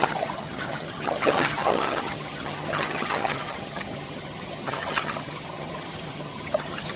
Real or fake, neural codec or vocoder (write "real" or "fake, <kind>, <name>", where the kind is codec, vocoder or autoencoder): fake, vocoder, HiFi-GAN